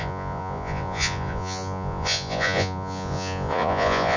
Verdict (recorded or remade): remade